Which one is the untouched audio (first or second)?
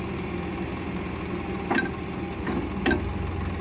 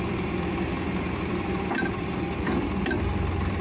first